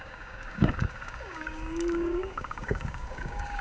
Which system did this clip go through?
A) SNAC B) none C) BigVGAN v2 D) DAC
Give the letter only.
D